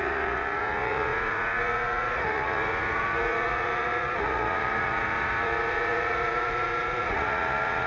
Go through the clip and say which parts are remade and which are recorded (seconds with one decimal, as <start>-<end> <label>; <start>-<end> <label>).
0.0-7.9 remade